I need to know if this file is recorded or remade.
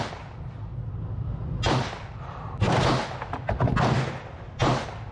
recorded